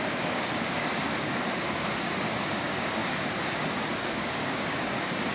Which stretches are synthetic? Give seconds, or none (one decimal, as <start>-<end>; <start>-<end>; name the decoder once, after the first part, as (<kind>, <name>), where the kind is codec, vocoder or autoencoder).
0.0-5.3 (codec, DAC)